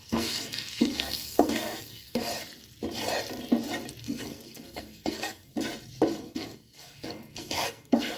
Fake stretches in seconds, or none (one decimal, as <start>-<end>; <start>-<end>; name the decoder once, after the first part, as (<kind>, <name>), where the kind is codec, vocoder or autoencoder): 0.0-2.3 (codec, SNAC); 4.0-5.5; 6.2-8.2